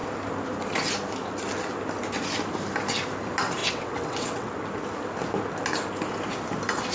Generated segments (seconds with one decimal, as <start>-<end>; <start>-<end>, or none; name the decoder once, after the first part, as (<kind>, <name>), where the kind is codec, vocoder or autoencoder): 3.6-4.5 (vocoder, WaveNeXt)